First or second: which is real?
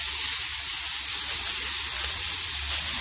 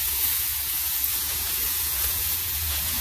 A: first